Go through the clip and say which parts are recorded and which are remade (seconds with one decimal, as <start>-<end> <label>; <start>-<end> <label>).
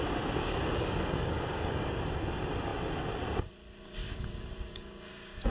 0.0-0.4 recorded; 0.4-2.0 remade; 2.0-4.0 recorded; 4.0-5.1 remade; 5.1-5.5 recorded